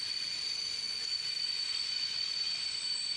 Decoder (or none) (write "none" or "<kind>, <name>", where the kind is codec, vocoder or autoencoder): none